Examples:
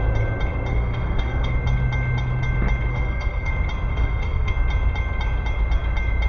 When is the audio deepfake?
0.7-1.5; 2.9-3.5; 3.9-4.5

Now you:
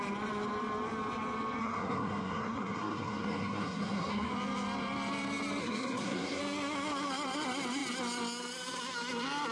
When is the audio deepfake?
1.6-4.3; 5.6-6.4

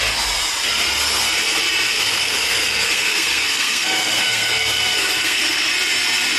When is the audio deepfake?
1.9-5.7

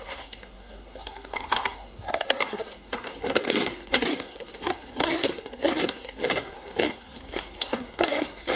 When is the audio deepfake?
0.0-8.6